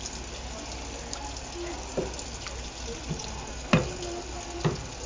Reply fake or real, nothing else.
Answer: real